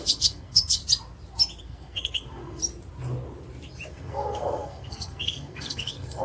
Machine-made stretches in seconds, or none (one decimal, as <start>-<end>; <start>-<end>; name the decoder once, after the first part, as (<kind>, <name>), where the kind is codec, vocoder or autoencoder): 0.0-0.8 (codec, SNAC); 1.6-2.6; 3.9-6.2